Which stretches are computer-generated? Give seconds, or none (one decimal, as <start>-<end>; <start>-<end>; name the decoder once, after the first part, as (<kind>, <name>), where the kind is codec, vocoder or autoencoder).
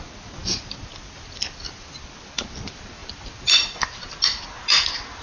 none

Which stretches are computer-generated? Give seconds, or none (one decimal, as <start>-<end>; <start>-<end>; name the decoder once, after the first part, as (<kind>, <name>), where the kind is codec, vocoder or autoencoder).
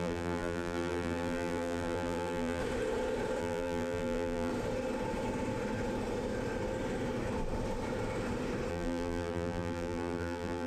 0.0-2.6 (vocoder, BigVGAN v2); 3.4-4.5; 8.7-10.7